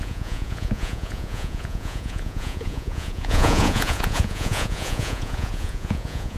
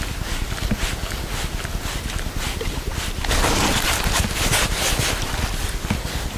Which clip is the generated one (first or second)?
first